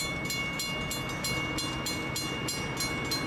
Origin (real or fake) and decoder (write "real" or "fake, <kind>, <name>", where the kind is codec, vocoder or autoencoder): real